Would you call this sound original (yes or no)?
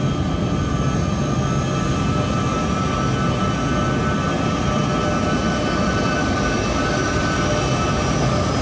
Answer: yes